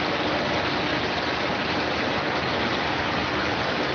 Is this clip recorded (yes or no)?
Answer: yes